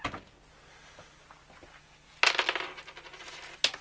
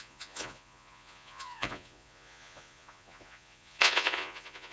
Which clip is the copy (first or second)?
second